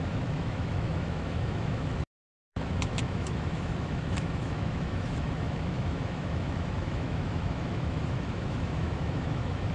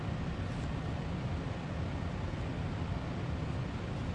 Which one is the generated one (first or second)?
first